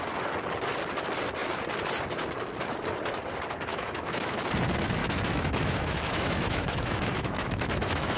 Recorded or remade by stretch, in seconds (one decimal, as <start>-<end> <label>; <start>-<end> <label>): 0.0-3.7 recorded; 3.7-4.4 remade; 4.4-5.0 recorded; 5.0-8.2 remade